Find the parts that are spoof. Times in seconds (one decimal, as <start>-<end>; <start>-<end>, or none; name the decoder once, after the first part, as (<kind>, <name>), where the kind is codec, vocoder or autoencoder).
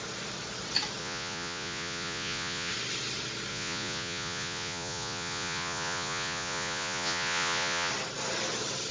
1.0-2.7 (vocoder, Vocos); 3.5-7.9